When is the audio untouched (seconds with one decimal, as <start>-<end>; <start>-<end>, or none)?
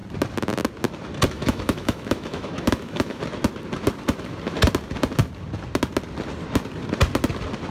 0.0-1.3; 3.2-7.7